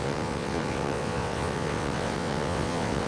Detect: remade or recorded remade